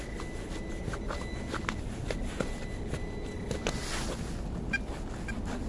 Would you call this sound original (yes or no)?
yes